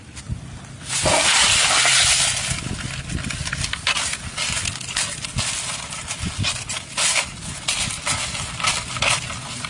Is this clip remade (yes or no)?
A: no